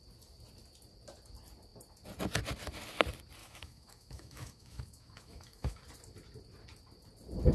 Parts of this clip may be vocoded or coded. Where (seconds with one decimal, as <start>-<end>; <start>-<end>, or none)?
3.4-5.8